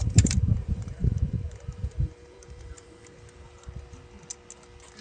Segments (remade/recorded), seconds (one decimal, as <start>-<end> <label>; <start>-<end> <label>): 0.0-3.0 remade; 3.0-5.0 recorded